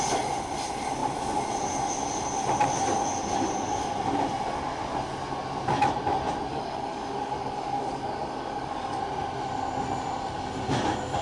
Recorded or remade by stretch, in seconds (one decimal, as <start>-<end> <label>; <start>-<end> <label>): 0.0-6.5 recorded; 6.5-9.0 remade; 9.0-11.2 recorded

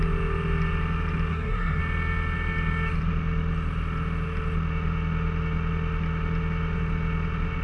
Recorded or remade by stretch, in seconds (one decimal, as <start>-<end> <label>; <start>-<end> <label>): 0.0-1.3 recorded; 1.3-1.8 remade; 1.8-7.6 recorded

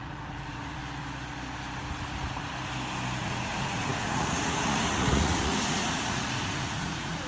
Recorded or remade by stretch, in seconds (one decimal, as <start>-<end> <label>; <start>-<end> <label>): 0.0-0.8 remade; 0.8-2.0 recorded; 2.0-2.5 remade; 2.5-3.2 recorded; 3.2-7.3 remade

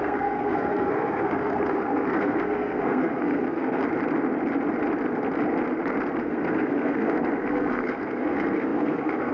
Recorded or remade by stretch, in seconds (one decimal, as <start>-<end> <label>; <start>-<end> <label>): 0.0-3.8 remade; 3.8-6.2 recorded; 6.2-9.3 remade